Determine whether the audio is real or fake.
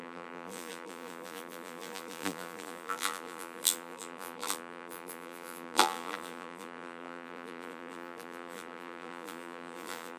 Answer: fake